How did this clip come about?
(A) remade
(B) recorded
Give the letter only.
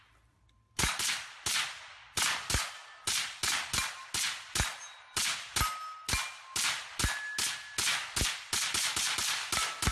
B